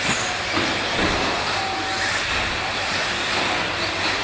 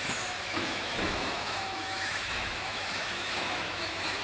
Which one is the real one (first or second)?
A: first